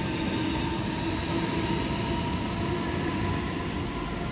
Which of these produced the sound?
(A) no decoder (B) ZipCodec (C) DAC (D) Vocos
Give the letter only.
A